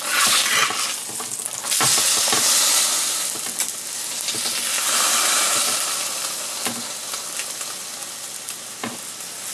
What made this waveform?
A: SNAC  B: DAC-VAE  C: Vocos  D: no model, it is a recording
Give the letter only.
D